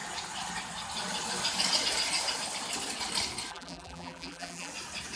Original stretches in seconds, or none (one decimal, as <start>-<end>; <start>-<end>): 0.0-3.5; 4.7-5.2